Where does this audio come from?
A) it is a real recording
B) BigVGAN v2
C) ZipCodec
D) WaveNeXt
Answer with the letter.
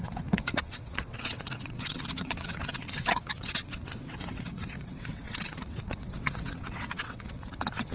D